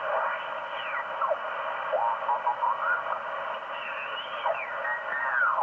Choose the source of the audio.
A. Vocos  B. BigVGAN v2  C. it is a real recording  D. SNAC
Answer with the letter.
C